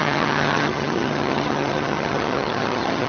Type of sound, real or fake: fake